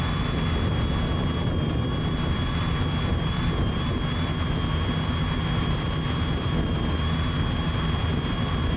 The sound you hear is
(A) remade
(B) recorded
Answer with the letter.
B